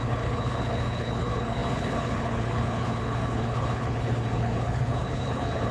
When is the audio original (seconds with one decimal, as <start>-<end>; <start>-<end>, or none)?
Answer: none